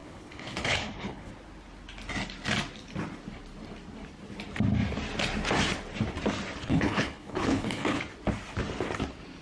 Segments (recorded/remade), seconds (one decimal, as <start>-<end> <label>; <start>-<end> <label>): 0.0-1.3 remade; 1.3-6.6 recorded; 6.6-8.0 remade; 8.0-9.4 recorded